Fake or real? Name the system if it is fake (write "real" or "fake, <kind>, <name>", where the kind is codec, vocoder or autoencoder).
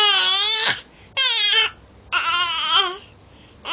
real